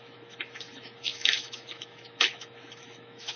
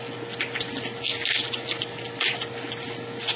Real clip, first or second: second